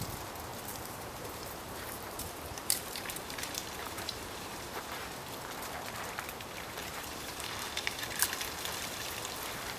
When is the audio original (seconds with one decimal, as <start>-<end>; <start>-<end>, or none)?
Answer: 0.0-0.5; 5.0-6.8; 8.1-9.8